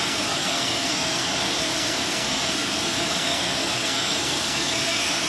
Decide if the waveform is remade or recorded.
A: remade